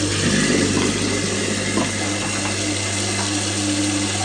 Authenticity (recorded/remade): recorded